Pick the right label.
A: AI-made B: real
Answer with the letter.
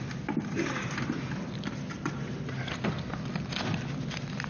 B